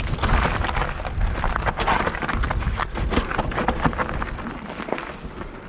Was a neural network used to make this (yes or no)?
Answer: no